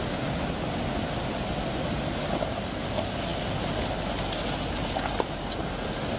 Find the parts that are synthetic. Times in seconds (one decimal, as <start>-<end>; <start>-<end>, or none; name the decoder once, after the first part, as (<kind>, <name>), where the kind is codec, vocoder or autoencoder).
none